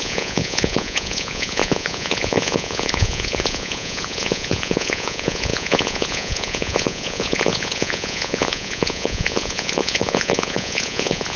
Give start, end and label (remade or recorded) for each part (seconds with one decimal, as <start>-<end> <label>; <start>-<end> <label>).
0.0-11.4 remade